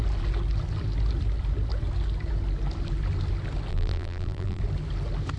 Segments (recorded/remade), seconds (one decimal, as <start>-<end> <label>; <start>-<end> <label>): 0.0-3.7 recorded; 3.7-4.6 remade; 4.6-5.4 recorded